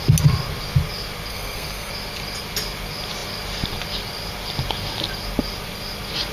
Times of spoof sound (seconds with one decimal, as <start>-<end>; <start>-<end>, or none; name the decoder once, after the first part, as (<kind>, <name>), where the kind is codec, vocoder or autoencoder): 1.3-1.9 (codec, SNAC)